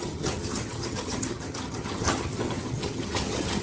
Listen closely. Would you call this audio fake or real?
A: fake